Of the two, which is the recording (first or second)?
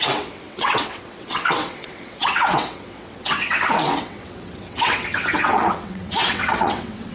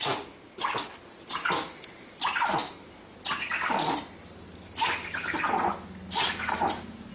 second